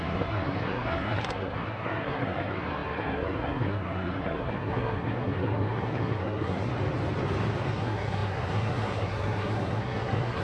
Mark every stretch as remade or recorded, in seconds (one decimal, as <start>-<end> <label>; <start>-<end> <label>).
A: 0.0-6.7 remade; 6.7-7.7 recorded; 7.7-10.4 remade